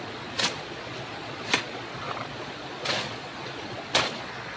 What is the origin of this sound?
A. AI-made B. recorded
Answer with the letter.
A